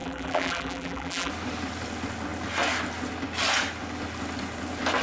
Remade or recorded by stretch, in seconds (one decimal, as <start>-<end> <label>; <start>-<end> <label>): 0.0-1.3 remade; 1.3-5.0 recorded